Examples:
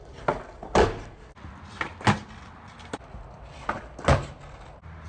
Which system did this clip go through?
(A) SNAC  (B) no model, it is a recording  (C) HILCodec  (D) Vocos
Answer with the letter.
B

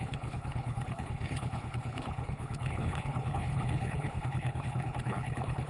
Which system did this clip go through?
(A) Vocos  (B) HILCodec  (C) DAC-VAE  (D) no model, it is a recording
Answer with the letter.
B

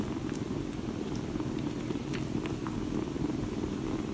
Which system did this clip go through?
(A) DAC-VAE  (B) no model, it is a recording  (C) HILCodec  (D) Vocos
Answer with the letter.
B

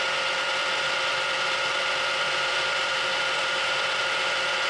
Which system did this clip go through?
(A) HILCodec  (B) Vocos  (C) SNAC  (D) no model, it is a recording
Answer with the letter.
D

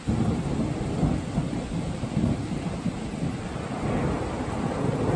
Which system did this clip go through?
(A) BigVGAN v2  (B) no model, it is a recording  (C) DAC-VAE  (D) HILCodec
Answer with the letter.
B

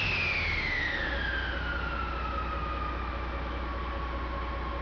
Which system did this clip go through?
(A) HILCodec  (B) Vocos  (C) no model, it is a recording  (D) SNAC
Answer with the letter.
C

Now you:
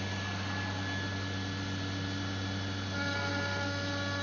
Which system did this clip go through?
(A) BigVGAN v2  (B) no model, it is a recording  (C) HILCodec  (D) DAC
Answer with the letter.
B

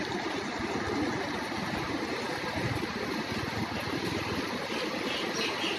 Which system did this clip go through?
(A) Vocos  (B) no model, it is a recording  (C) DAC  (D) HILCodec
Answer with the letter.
B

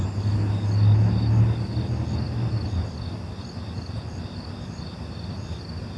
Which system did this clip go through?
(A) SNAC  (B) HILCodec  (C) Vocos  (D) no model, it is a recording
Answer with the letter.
D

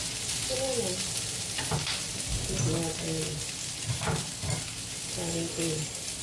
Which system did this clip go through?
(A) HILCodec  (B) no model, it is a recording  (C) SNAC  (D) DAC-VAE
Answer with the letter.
B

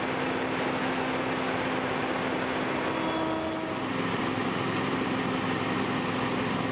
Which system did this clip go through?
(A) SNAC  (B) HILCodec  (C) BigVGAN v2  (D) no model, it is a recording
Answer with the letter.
D